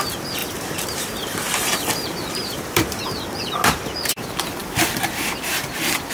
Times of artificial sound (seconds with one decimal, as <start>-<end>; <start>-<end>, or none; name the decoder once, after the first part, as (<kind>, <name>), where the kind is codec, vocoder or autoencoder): 0.4-4.1 (vocoder, BigVGAN v2)